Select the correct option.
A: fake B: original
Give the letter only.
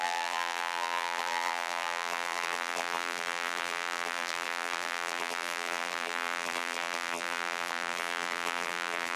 A